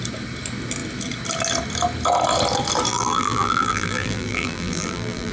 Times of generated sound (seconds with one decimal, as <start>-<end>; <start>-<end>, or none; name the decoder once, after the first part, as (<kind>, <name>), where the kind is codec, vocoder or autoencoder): 2.9-5.3 (vocoder, BigVGAN v2)

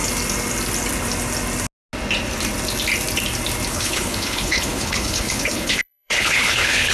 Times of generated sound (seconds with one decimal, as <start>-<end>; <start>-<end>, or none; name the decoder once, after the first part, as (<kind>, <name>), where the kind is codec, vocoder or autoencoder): 3.7-6.9 (codec, HILCodec)

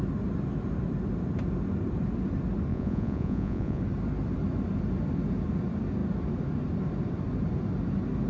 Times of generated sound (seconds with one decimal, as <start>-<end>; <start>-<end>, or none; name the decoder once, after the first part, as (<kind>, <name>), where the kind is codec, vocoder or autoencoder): 2.7-3.8 (vocoder, Vocos)

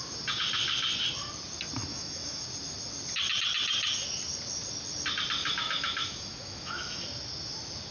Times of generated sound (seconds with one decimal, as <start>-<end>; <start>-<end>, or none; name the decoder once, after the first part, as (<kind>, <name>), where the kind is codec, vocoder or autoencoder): 1.9-2.4 (autoencoder, DAC-VAE); 5.4-7.0